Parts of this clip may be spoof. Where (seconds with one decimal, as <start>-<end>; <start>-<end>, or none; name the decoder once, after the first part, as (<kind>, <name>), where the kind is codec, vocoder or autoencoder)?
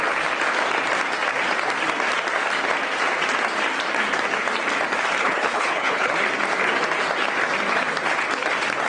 5.2-6.1 (codec, HILCodec)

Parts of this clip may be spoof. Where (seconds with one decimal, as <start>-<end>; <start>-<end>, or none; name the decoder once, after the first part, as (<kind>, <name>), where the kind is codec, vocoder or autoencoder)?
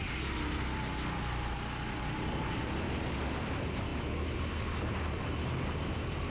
none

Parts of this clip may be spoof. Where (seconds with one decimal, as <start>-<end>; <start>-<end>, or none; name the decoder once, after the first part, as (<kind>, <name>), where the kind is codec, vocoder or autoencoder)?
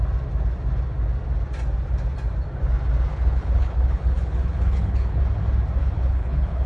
3.1-5.2 (codec, HILCodec); 5.8-6.7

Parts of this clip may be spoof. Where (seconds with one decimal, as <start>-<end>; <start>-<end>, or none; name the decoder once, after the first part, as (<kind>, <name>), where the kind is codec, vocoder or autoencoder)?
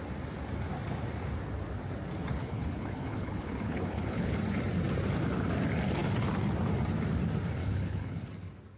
2.3-4.3 (codec, HILCodec); 7.6-8.3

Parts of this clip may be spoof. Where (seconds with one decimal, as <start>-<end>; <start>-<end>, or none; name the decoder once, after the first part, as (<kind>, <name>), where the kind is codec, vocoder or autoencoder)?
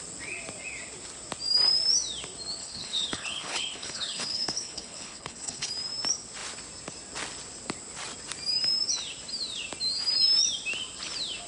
2.6-5.7 (codec, HILCodec)